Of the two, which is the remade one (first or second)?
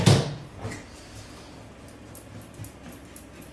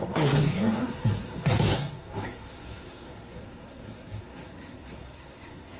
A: second